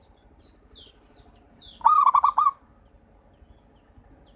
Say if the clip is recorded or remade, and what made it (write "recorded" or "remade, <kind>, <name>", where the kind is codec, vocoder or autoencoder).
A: recorded